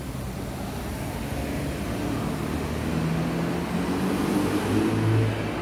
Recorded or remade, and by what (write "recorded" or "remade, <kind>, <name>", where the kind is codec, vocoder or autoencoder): recorded